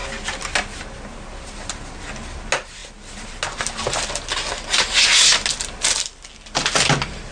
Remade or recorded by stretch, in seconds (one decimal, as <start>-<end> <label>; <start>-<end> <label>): 0.0-7.3 recorded